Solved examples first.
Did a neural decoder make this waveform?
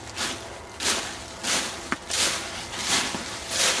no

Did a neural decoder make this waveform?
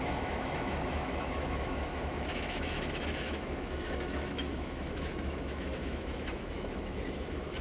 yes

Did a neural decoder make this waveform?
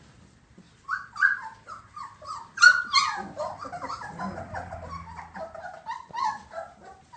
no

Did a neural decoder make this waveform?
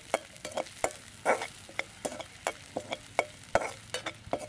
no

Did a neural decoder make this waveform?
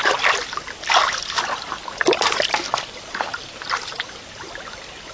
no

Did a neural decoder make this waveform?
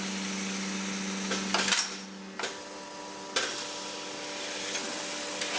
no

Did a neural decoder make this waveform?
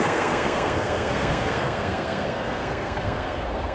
yes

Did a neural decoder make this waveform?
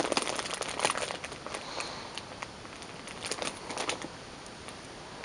no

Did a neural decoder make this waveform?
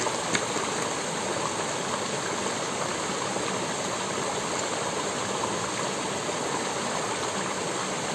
no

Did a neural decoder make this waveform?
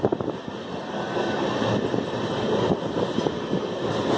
no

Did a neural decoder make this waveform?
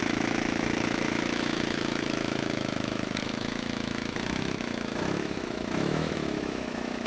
yes